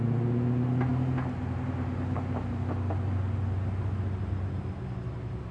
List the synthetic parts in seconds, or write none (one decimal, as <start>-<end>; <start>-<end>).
none